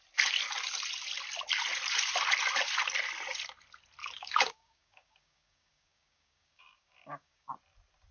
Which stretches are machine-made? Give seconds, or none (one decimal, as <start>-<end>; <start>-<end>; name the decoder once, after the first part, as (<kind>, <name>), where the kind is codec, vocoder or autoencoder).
4.0-7.5 (codec, DAC)